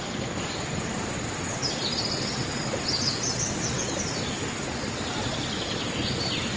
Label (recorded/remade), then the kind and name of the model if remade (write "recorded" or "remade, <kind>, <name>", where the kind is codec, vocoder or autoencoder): recorded